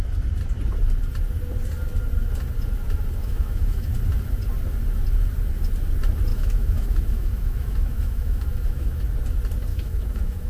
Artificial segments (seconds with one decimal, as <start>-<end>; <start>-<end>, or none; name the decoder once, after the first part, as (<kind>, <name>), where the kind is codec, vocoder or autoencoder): 3.2-3.9 (autoencoder, DAC-VAE); 6.3-9.0; 9.7-10.5